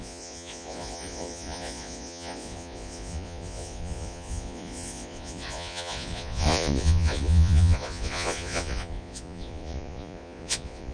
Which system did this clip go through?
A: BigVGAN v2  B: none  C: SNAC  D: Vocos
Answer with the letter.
D